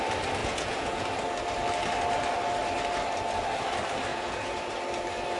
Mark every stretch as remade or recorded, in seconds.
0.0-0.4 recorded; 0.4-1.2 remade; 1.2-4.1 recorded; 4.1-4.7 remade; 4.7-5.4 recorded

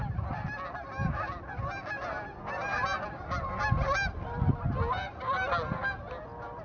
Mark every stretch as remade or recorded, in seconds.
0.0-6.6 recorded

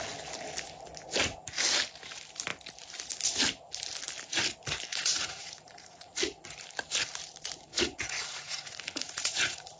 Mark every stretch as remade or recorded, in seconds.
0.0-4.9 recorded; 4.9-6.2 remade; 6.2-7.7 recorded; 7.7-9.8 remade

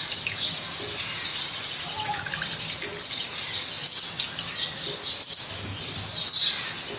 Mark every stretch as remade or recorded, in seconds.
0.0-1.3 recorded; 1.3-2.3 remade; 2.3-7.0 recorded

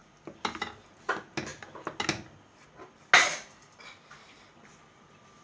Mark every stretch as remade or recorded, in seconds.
0.0-5.4 recorded

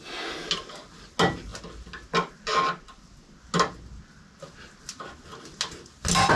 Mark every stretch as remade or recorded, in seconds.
0.0-6.4 recorded

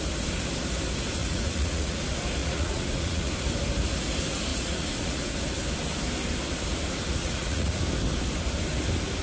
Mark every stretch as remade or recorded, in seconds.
0.0-1.2 recorded; 1.2-2.0 remade; 2.0-2.4 recorded; 2.4-3.3 remade; 3.3-4.5 recorded; 4.5-5.3 remade; 5.3-7.2 recorded; 7.2-7.8 remade; 7.8-9.2 recorded